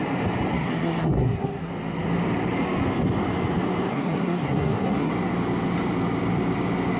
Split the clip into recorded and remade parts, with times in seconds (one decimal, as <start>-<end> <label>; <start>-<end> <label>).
0.0-0.5 recorded; 0.5-1.7 remade; 1.7-3.9 recorded; 3.9-5.1 remade; 5.1-7.0 recorded